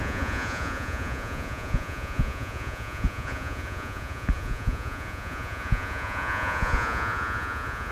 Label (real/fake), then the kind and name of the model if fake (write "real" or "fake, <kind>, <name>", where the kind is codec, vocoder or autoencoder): fake, vocoder, Vocos